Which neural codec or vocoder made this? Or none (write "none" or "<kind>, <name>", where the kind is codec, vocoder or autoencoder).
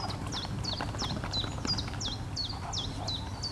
none